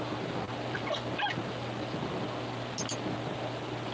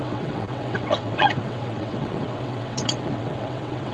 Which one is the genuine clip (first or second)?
first